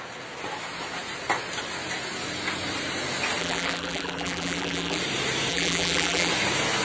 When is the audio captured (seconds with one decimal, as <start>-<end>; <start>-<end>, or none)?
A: 0.0-3.4; 5.0-5.5; 6.3-6.8